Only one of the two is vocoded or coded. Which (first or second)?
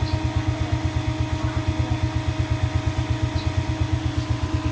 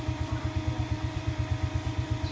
second